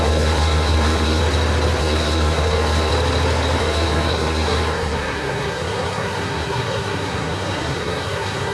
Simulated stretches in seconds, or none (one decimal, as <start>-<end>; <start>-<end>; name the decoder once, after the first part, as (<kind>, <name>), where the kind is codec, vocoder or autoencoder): 0.0-1.2 (codec, SNAC); 1.8-2.9; 3.6-8.5